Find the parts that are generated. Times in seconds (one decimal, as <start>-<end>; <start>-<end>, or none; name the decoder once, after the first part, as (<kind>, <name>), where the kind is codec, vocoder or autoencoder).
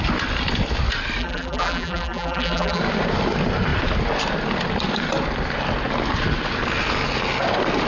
1.2-2.8 (vocoder, BigVGAN v2)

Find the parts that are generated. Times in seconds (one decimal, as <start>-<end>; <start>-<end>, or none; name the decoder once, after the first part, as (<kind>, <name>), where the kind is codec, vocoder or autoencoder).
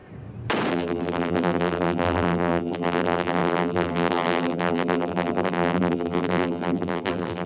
0.7-7.5 (vocoder, BigVGAN v2)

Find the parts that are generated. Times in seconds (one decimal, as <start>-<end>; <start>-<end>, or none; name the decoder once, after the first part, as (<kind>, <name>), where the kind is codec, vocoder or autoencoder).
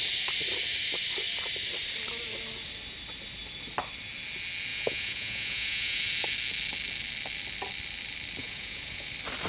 4.7-6.0 (vocoder, Vocos); 8.4-9.1